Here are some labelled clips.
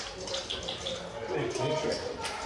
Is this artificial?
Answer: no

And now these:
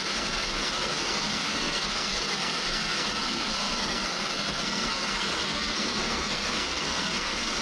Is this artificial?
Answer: yes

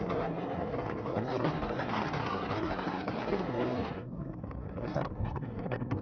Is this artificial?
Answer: yes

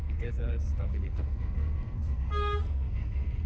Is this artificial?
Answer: yes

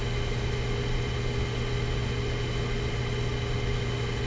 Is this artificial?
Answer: no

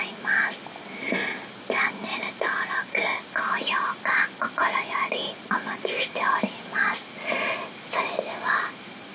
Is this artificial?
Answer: no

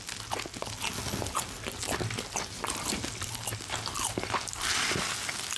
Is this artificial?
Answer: no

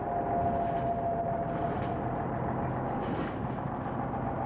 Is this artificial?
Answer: no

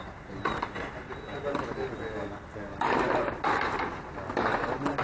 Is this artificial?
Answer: no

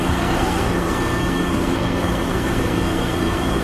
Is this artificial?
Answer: yes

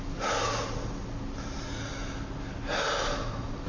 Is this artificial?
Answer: no